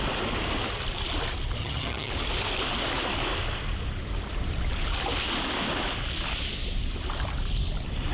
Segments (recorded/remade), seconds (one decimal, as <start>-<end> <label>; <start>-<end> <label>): 0.0-1.6 recorded; 1.6-2.1 remade; 2.1-8.1 recorded